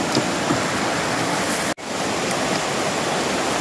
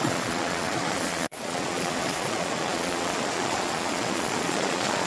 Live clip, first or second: first